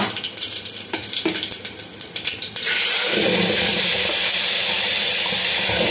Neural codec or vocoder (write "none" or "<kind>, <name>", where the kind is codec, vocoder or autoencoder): vocoder, BigVGAN v2